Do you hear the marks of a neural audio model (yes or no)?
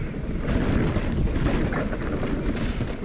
no